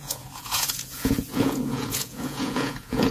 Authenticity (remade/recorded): remade